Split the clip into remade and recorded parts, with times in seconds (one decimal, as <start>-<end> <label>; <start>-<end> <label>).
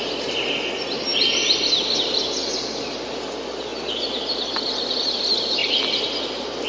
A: 0.0-1.1 recorded; 1.1-2.2 remade; 2.2-5.6 recorded; 5.6-6.7 remade